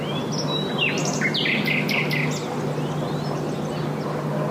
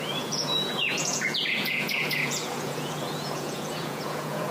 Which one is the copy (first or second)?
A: second